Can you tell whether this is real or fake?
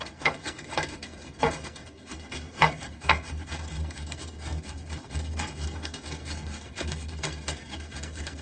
fake